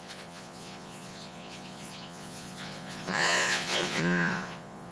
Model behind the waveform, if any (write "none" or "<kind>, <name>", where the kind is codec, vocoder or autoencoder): vocoder, Vocos